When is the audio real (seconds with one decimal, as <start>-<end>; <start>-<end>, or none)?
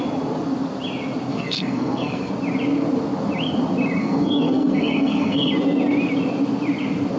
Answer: 0.0-1.3; 2.3-4.0; 5.5-7.2